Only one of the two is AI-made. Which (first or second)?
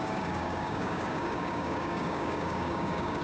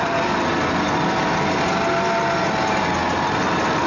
first